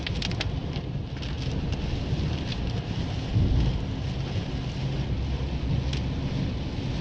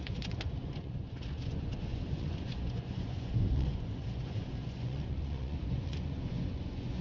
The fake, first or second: second